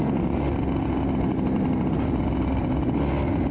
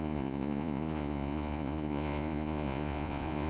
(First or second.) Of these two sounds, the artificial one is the second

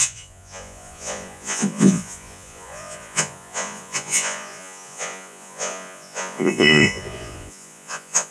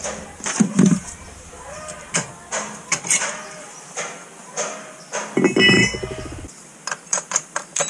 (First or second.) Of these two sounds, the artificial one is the first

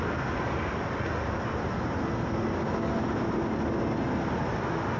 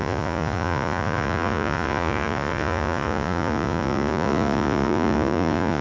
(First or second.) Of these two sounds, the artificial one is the second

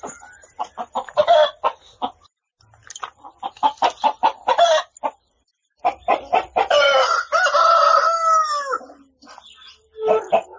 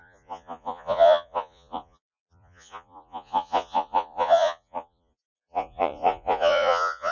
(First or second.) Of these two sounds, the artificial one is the second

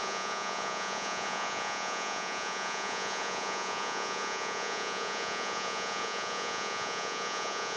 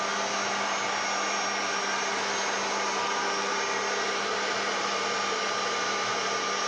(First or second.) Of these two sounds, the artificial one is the first